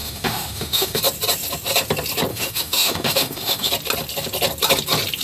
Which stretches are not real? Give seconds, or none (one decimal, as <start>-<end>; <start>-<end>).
0.0-1.0; 2.3-3.7